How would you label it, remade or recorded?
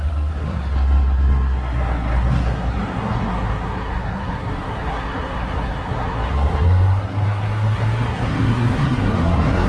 remade